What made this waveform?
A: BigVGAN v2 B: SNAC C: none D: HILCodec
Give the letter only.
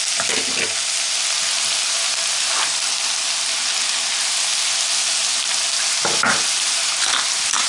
C